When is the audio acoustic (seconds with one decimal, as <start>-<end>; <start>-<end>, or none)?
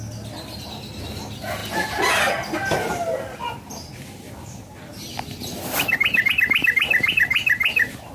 0.0-4.9; 6.3-8.1